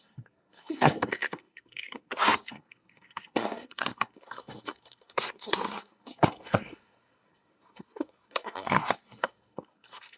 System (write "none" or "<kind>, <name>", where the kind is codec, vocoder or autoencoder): codec, SNAC